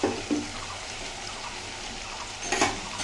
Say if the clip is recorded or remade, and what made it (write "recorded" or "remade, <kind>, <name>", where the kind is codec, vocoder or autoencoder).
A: recorded